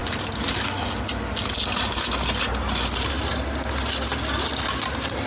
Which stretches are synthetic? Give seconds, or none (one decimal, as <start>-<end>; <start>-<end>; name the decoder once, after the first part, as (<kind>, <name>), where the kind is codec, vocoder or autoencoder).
none